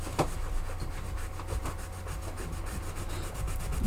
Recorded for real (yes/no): yes